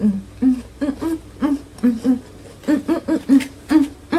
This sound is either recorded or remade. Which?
recorded